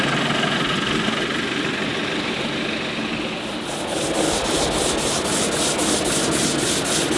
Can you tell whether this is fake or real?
real